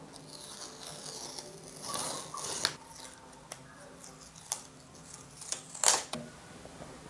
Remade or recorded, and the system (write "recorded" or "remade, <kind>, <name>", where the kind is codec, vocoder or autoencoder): recorded